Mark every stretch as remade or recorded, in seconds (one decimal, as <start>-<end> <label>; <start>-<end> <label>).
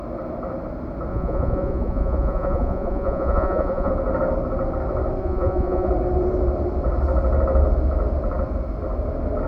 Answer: 0.0-1.1 recorded; 1.1-3.9 remade; 3.9-5.2 recorded; 5.2-5.9 remade; 5.9-9.5 recorded